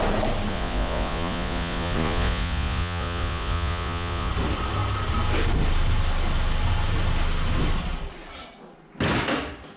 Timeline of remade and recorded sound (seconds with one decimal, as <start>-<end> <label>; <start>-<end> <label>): 0.0-0.5 recorded; 0.5-4.3 remade; 4.3-9.8 recorded